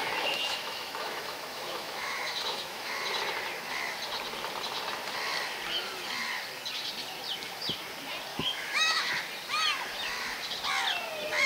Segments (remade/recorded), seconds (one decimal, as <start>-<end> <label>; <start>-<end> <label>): 0.0-2.9 remade; 2.9-8.3 recorded; 8.3-9.1 remade; 9.1-11.5 recorded